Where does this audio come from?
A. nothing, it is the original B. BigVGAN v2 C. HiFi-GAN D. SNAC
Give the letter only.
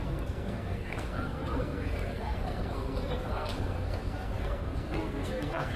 D